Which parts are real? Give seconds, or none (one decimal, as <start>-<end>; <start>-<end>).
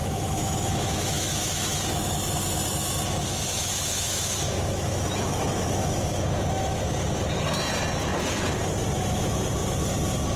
2.1-3.5; 6.8-10.4